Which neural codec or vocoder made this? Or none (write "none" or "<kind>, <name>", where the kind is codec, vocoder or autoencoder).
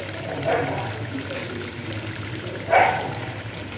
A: vocoder, BigVGAN v2